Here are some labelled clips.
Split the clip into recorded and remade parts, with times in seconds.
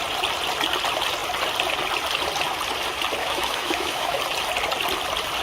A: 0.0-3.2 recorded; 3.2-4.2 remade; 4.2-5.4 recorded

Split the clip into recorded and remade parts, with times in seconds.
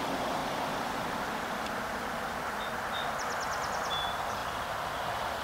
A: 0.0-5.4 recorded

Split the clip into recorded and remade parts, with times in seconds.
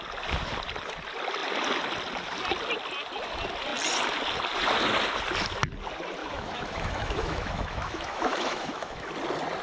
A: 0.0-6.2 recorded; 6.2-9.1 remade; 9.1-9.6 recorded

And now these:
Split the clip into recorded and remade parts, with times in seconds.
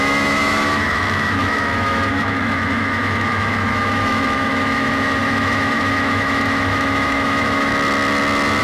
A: 0.0-7.7 remade; 7.7-8.6 recorded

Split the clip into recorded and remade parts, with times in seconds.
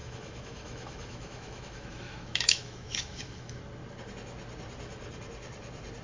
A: 0.0-3.6 remade; 3.6-6.0 recorded